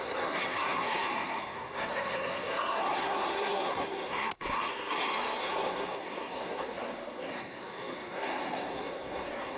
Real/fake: fake